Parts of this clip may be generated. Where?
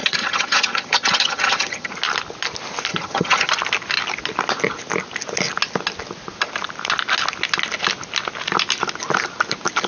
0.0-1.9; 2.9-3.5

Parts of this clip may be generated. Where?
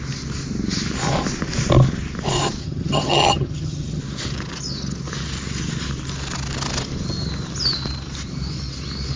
2.6-4.0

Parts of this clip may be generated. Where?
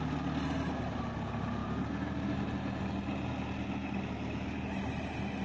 none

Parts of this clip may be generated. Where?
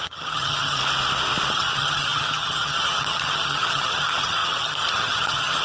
0.0-0.8; 1.5-5.6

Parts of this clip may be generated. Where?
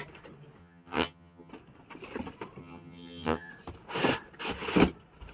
0.6-1.5; 2.6-3.5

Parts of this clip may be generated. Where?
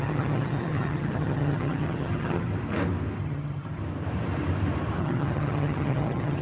0.0-2.5; 3.2-3.8; 5.0-6.4